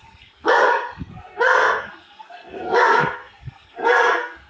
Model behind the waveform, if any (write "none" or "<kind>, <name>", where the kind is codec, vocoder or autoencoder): codec, SNAC